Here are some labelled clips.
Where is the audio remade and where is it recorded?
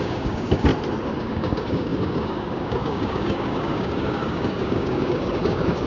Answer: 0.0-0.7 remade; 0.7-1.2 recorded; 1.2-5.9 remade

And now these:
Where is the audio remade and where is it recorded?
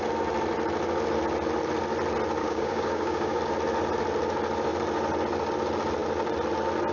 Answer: 0.0-2.4 recorded; 2.4-3.4 remade; 3.4-6.9 recorded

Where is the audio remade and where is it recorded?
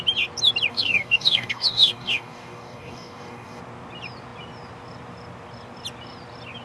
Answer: 0.0-0.7 recorded; 0.7-3.6 remade; 3.6-6.6 recorded